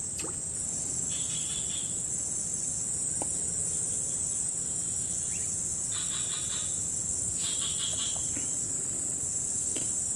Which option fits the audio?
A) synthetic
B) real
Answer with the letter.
B